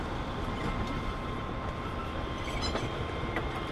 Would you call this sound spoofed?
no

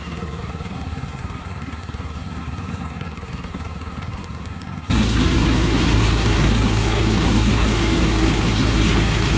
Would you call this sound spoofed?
yes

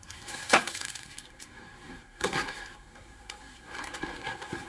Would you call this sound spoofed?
yes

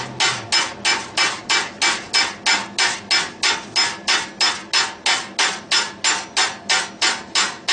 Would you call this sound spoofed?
no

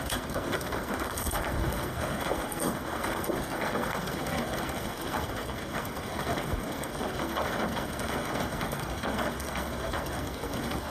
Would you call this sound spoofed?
yes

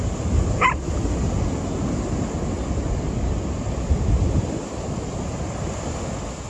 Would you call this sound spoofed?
no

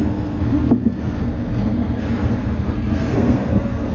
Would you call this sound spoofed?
yes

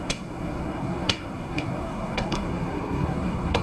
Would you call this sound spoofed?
yes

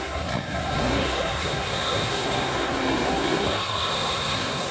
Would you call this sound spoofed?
yes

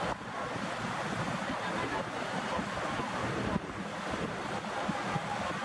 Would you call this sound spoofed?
no